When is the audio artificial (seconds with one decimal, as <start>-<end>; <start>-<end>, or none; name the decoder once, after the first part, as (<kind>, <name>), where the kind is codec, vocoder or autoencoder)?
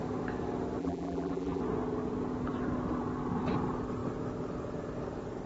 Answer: 0.8-1.6 (vocoder, BigVGAN v2)